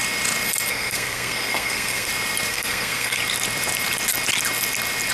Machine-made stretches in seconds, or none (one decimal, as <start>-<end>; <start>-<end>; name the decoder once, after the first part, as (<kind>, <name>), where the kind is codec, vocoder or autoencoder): 0.7-2.1 (codec, SNAC); 2.5-3.2